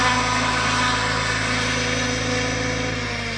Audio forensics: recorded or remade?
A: recorded